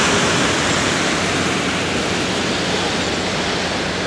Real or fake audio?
real